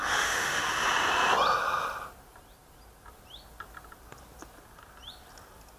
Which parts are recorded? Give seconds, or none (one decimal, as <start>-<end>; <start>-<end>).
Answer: 0.7-5.8